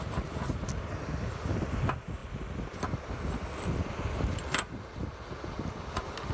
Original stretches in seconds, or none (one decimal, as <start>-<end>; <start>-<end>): 0.0-6.3